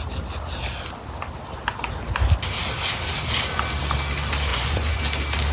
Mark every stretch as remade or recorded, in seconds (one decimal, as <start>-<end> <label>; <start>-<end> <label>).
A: 0.0-4.5 recorded; 4.5-5.0 remade; 5.0-5.5 recorded

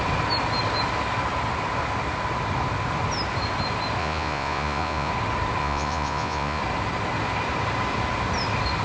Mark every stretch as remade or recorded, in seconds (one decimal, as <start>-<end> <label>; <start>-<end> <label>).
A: 0.0-4.0 recorded; 4.0-5.1 remade; 5.1-5.6 recorded; 5.6-6.6 remade; 6.6-8.8 recorded

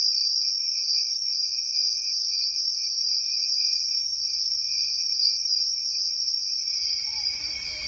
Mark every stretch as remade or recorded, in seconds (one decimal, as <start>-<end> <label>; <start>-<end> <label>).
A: 0.0-0.8 recorded; 0.8-5.5 remade; 5.5-6.2 recorded; 6.2-7.5 remade; 7.5-7.9 recorded

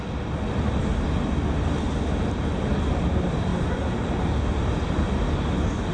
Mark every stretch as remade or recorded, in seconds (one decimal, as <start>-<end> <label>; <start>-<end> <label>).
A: 0.0-5.9 recorded